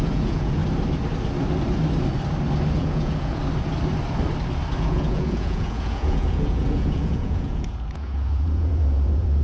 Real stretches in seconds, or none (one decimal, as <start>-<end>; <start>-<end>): 0.6-2.7; 3.4-4.8